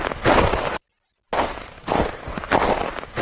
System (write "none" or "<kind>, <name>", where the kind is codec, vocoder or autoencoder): none